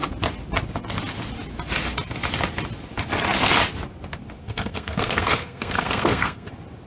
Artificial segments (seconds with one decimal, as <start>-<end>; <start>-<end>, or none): 4.4-6.5